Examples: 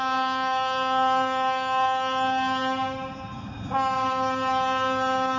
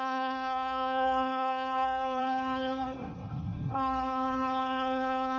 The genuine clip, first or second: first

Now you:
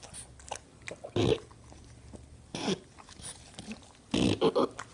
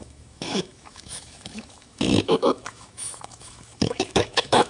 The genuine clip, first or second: first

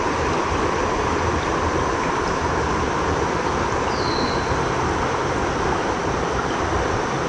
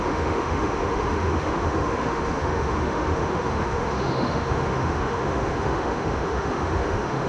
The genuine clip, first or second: first